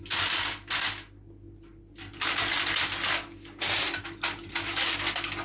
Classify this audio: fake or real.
real